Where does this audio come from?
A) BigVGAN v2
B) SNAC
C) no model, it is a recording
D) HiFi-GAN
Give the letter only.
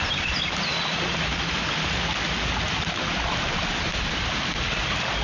C